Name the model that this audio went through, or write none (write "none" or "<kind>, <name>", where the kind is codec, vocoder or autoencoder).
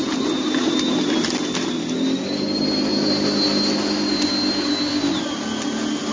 none